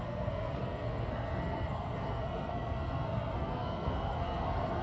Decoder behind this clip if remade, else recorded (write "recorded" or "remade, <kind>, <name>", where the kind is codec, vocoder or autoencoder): remade, codec, SNAC